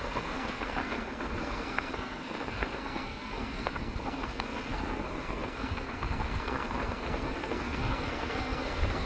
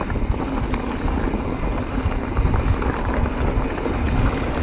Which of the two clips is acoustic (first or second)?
second